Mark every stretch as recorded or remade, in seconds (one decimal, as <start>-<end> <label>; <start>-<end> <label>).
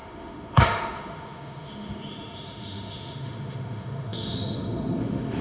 0.0-5.4 remade